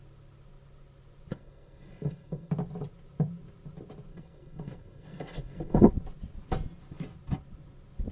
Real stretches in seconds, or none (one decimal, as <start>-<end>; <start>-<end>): 0.0-1.3; 2.5-4.1; 5.9-8.1